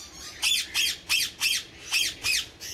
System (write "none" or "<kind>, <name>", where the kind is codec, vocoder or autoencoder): none